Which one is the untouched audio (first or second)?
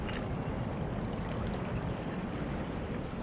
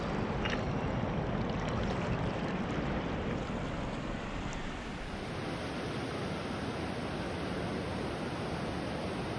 second